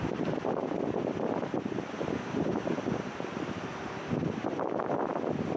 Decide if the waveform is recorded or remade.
remade